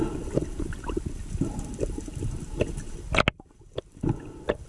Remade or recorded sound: recorded